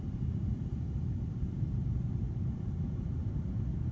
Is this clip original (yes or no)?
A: no